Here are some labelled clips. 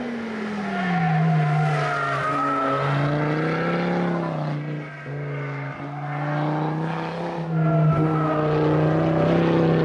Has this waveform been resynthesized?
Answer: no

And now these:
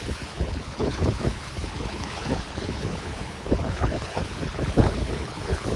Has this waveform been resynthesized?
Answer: yes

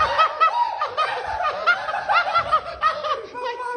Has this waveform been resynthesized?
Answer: no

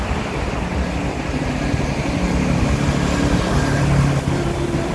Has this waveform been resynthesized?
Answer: no